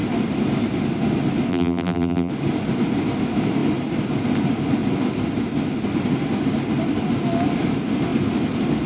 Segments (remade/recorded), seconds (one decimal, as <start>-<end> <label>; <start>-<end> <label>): 0.0-1.5 recorded; 1.5-2.3 remade; 2.3-8.9 recorded